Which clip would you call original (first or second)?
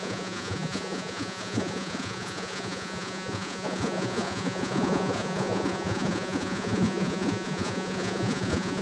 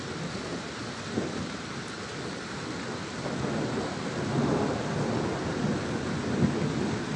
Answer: second